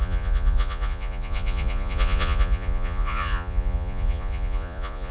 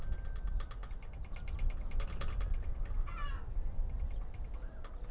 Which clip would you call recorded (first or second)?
second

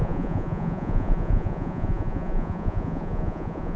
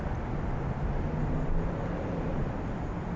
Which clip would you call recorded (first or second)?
second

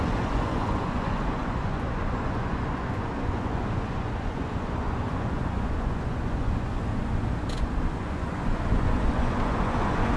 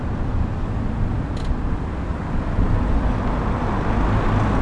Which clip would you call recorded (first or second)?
second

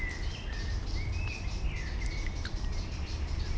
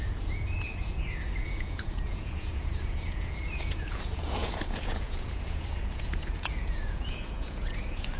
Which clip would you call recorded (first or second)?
first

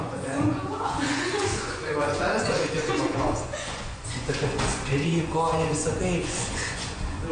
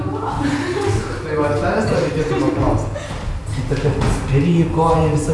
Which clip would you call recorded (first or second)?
second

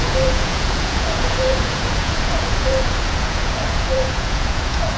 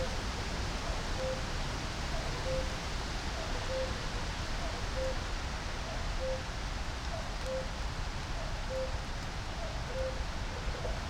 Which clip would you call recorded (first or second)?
second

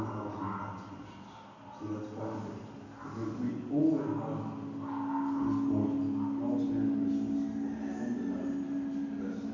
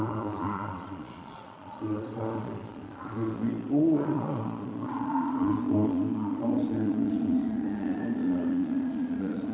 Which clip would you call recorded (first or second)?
first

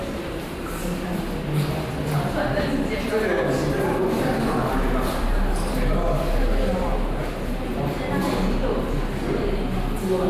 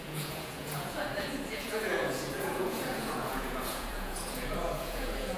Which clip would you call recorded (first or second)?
first